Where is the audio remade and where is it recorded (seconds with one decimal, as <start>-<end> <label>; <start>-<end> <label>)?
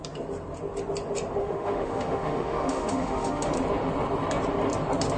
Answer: 0.0-1.4 recorded; 1.4-3.5 remade; 3.5-5.2 recorded